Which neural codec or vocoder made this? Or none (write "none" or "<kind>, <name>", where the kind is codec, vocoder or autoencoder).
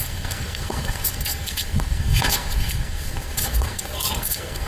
codec, SNAC